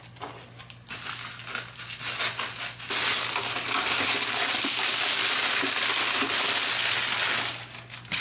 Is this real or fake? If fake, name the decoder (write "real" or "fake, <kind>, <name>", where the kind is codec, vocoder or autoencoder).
real